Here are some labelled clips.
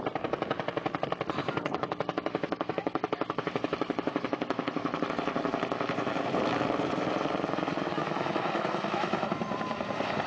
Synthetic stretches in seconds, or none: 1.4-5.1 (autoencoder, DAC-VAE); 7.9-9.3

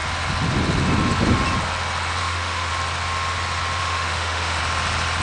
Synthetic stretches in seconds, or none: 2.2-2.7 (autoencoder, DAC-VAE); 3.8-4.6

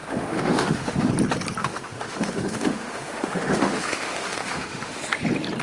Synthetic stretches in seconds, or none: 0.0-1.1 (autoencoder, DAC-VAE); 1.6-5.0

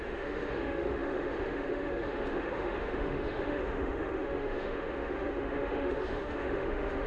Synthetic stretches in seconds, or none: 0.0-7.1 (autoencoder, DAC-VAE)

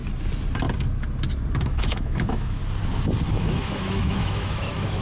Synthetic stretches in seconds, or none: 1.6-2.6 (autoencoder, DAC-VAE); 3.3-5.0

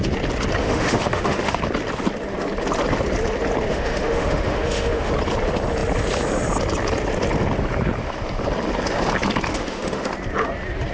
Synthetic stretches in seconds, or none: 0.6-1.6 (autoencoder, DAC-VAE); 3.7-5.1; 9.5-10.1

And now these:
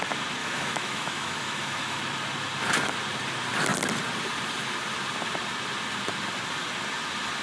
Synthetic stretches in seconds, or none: 0.4-2.0 (autoencoder, DAC-VAE)